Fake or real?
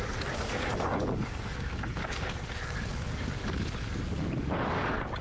fake